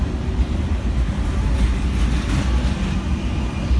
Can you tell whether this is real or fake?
real